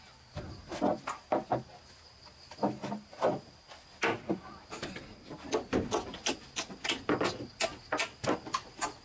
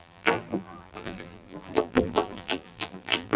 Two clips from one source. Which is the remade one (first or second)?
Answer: second